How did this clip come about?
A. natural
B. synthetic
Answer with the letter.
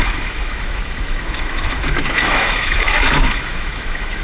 B